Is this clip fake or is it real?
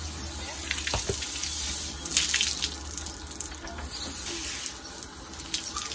real